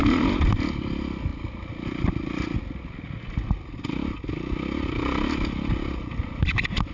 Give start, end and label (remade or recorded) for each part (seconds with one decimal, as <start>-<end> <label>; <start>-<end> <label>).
0.0-6.9 recorded